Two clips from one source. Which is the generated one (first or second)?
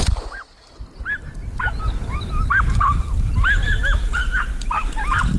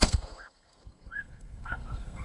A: second